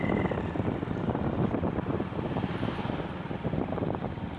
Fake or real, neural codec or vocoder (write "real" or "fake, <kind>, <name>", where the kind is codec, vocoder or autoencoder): real